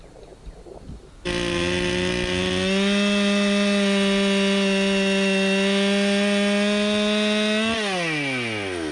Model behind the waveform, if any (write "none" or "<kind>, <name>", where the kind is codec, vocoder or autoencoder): none